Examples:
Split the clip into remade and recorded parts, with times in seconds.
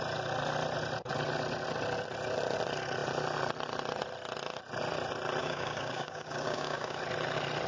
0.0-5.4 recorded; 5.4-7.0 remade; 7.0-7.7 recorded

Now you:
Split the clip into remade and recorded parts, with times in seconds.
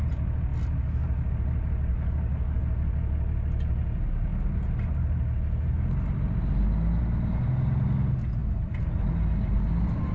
0.0-1.9 recorded; 1.9-2.6 remade; 2.6-10.1 recorded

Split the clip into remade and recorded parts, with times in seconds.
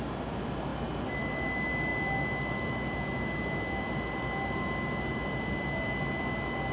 0.0-6.7 recorded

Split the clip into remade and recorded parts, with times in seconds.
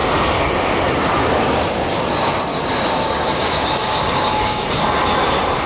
0.0-2.5 recorded; 2.5-4.7 remade; 4.7-5.7 recorded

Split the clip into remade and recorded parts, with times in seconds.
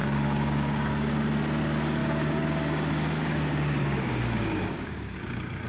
0.0-1.1 remade; 1.1-2.0 recorded; 2.0-5.7 remade